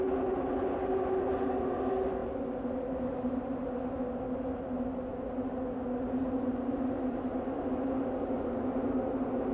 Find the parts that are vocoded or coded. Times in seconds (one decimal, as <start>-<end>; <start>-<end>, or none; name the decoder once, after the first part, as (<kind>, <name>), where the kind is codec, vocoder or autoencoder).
none